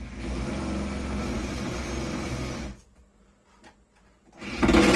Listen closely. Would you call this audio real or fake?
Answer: real